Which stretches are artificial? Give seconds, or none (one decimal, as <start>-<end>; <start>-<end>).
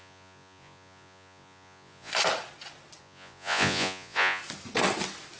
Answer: 0.0-2.1; 3.0-4.4